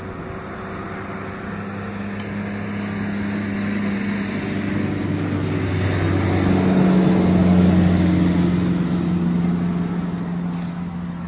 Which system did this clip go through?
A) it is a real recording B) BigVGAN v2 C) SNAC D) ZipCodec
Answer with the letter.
A